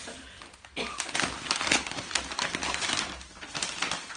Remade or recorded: recorded